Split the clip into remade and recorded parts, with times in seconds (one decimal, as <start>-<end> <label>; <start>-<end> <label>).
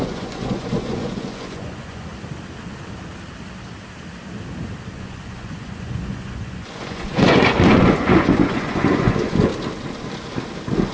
0.0-2.1 remade; 2.1-4.9 recorded; 4.9-9.5 remade; 9.5-10.9 recorded